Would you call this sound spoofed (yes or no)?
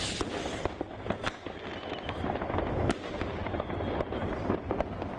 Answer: no